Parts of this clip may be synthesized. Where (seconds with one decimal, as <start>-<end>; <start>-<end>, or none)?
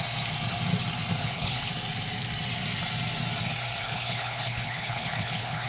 1.2-1.7; 3.8-5.7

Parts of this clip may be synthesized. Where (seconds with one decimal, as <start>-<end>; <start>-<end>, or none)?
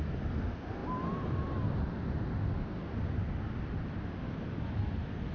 none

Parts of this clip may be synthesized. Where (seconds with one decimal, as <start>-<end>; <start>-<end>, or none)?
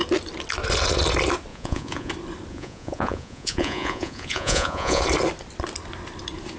1.5-2.1; 2.5-5.0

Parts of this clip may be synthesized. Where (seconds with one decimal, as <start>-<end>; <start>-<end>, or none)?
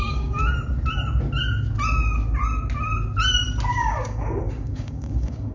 0.0-0.4; 3.7-5.5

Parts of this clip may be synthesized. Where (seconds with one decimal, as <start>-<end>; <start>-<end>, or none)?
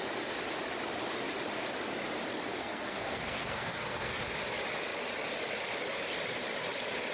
2.6-4.2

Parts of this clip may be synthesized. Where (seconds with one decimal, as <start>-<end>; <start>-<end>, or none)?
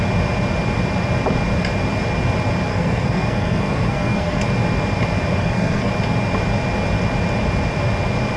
2.7-4.4; 5.4-5.9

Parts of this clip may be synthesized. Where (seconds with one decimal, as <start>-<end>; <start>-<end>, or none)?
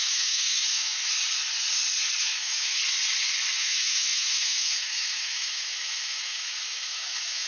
0.0-1.0; 2.2-2.8; 3.5-7.5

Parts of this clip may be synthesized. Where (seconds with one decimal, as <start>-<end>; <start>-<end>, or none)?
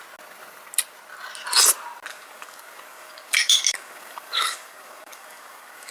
2.1-5.9